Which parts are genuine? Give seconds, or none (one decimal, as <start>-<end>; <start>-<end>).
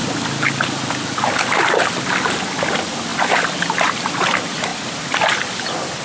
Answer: 0.0-6.0